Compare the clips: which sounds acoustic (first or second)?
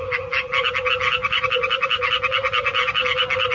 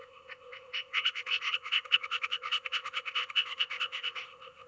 first